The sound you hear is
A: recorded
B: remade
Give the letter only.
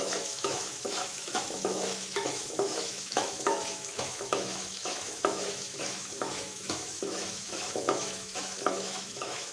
B